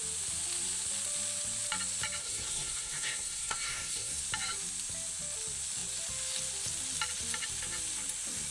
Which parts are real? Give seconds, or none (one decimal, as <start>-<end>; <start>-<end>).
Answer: 0.0-2.2; 4.2-8.5